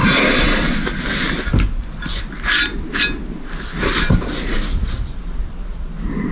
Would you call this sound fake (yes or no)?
no